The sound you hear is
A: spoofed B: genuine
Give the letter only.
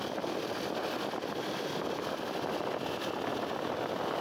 B